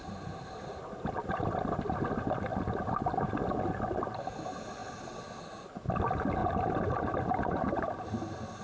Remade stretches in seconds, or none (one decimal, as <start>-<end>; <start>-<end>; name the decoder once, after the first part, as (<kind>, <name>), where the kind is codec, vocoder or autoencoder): 2.5-3.3 (vocoder, BigVGAN v2); 4.8-5.4; 6.4-8.1